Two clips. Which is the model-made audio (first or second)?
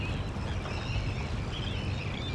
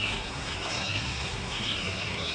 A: second